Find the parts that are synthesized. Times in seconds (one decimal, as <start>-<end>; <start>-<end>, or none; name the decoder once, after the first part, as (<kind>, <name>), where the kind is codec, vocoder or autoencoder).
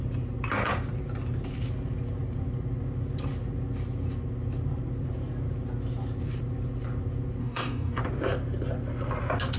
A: 7.4-8.0 (codec, DAC)